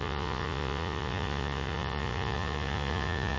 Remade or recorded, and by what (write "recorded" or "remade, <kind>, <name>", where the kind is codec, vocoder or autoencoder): remade, vocoder, Vocos